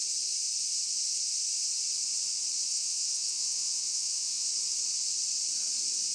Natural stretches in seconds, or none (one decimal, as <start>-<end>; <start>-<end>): 0.0-2.7; 4.5-6.1